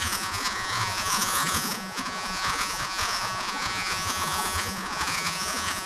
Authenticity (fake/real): fake